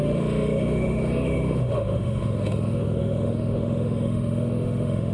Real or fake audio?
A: fake